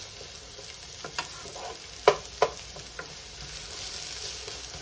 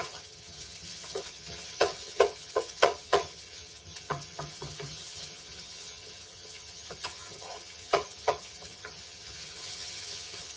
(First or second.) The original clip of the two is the first